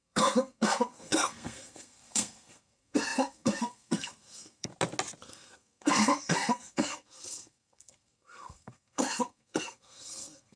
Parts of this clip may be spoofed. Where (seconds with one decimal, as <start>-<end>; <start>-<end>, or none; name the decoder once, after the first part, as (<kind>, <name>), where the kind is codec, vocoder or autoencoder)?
0.0-4.7 (codec, SNAC); 5.3-10.6